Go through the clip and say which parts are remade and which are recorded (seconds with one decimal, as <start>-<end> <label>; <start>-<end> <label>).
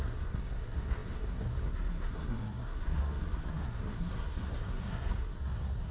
0.0-5.9 remade